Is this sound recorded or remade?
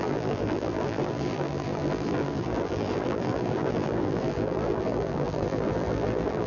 remade